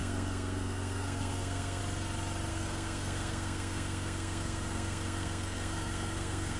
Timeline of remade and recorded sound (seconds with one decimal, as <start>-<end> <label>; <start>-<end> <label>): 0.0-1.8 remade; 1.8-2.5 recorded; 2.5-6.6 remade